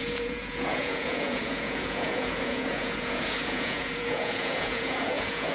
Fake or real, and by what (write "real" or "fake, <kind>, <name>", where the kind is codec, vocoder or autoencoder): fake, vocoder, Vocos